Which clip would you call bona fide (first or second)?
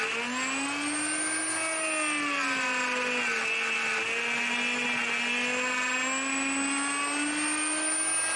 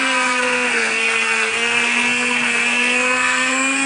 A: first